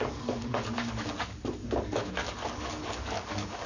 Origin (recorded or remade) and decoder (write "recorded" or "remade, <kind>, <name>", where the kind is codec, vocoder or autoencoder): remade, codec, DAC